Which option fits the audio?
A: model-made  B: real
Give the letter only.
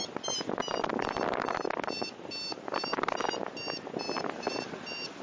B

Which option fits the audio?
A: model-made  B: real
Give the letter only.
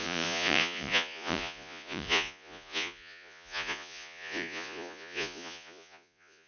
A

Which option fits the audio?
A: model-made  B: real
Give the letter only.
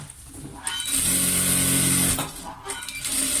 B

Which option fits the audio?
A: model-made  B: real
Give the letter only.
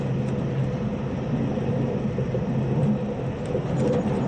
B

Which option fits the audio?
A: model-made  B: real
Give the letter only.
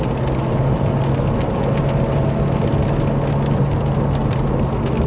B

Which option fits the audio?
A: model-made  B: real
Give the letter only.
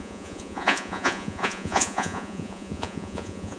A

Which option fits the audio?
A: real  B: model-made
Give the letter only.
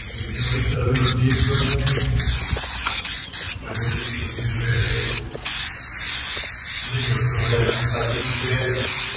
B